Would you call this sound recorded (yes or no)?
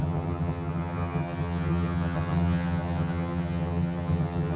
no